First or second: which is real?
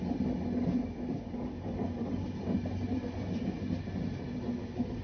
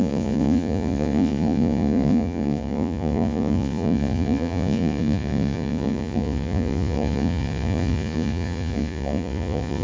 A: first